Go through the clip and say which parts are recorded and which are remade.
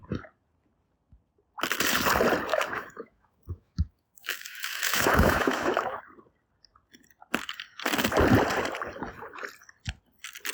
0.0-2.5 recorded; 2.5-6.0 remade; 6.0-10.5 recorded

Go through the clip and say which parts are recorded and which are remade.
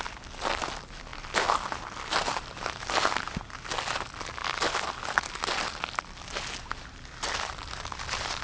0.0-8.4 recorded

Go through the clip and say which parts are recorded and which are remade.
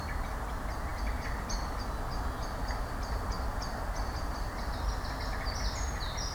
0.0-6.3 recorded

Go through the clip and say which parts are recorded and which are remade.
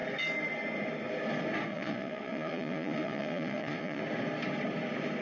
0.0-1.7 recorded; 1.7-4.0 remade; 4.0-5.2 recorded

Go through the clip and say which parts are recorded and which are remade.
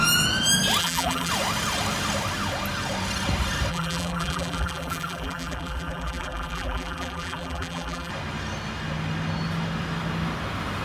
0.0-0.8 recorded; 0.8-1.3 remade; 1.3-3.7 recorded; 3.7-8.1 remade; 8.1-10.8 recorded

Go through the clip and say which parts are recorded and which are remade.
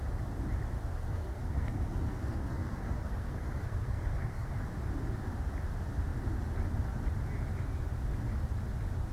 0.0-1.0 recorded; 1.0-4.5 remade; 4.5-9.1 recorded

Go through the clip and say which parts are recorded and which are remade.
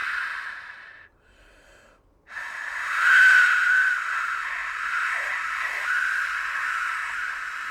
0.0-1.7 remade; 1.7-7.7 recorded